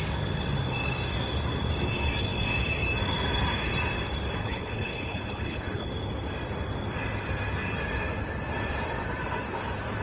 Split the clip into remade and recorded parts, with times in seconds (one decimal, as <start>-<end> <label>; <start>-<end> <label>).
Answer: 0.0-4.4 recorded; 4.4-5.9 remade; 5.9-10.0 recorded